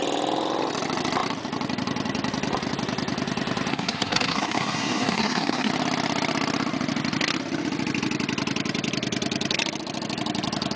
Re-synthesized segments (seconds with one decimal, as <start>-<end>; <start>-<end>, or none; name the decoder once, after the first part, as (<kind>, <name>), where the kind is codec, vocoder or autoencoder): 3.7-5.7 (codec, SNAC)